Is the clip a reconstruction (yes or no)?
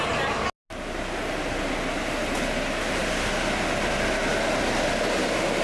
no